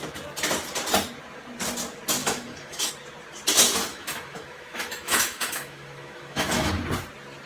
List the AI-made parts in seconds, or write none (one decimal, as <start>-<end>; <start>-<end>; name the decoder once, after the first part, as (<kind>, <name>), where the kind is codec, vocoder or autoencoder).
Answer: 2.2-2.9 (autoencoder, DAC-VAE); 3.9-6.7